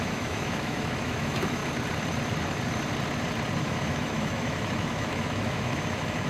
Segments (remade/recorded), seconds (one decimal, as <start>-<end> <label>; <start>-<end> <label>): 0.0-1.6 remade; 1.6-3.6 recorded; 3.6-6.3 remade